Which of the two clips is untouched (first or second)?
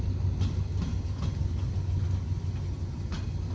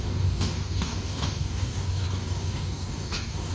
first